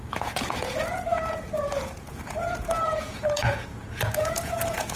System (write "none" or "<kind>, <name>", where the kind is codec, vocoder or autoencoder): vocoder, Vocos